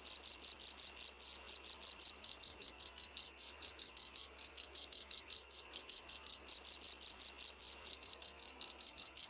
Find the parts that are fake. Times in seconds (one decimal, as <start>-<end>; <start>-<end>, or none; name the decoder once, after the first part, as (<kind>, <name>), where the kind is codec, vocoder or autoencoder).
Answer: 2.2-6.5 (codec, SNAC); 7.9-9.3